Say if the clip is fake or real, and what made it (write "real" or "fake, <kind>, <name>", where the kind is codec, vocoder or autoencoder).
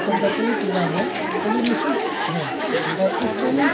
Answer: fake, autoencoder, DAC-VAE